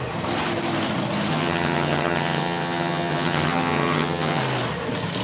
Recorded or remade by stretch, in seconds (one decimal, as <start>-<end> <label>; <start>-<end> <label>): 0.0-1.3 recorded; 1.3-4.4 remade; 4.4-5.2 recorded